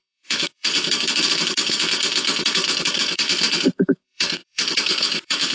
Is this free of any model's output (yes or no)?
no